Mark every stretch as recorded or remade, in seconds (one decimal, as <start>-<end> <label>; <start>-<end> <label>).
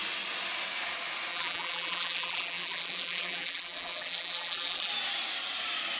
0.0-1.3 recorded; 1.3-4.9 remade; 4.9-6.0 recorded